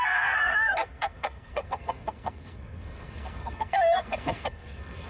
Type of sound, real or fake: fake